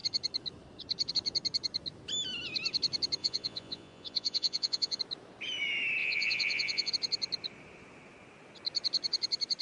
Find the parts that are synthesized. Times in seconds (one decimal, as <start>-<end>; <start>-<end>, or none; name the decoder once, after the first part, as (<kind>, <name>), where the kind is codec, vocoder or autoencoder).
3.2-5.0 (vocoder, Vocos); 6.0-6.9